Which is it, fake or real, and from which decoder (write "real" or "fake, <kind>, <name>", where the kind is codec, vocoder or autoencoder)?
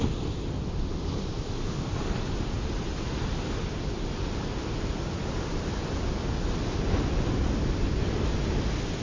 real